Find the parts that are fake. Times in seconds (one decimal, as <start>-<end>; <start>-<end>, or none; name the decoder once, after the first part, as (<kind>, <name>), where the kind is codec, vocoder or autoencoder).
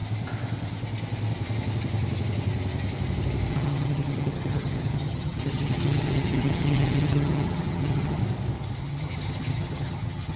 3.5-8.2 (vocoder, HiFi-GAN); 8.8-10.4